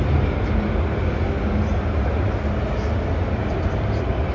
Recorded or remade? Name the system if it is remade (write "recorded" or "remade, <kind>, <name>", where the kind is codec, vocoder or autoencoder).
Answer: recorded